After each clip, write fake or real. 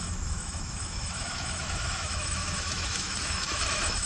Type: fake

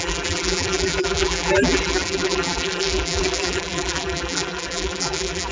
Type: fake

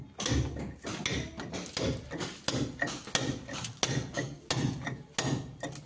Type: real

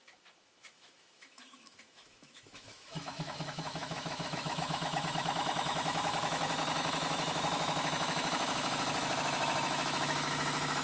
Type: fake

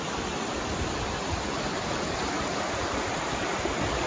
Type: real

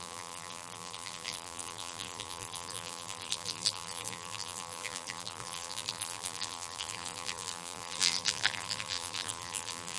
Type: fake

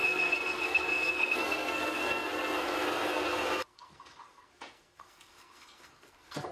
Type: fake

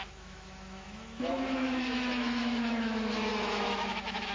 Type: fake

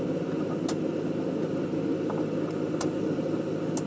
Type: real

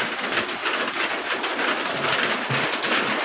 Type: real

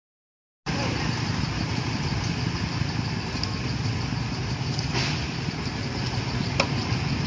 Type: real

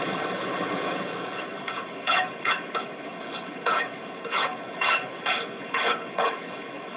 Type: fake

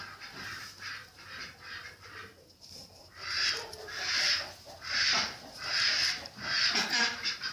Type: fake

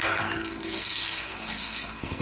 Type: fake